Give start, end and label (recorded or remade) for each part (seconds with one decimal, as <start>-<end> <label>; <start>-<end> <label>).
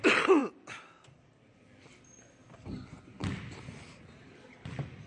0.0-5.1 recorded